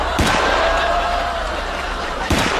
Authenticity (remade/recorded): remade